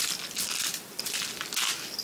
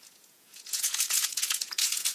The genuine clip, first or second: first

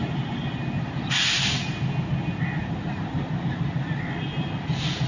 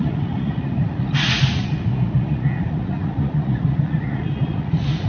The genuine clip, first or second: first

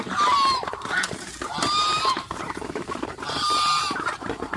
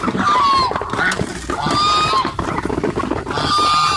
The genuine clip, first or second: second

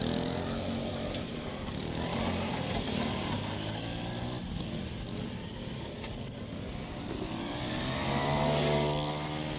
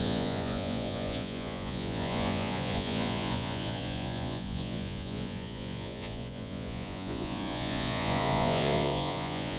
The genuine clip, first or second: first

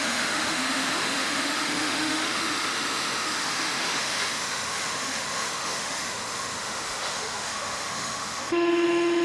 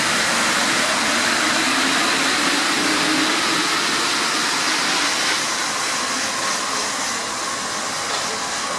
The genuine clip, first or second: second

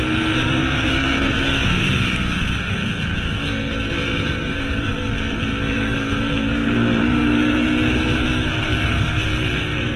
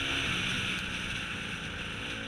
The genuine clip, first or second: second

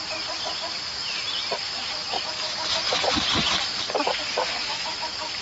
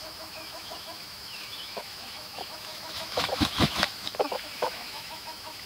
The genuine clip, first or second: first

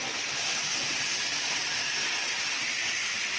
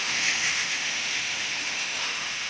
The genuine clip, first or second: first